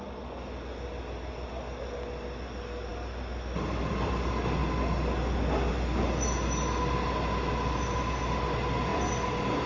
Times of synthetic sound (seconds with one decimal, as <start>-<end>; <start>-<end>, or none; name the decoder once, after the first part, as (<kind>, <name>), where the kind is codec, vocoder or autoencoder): none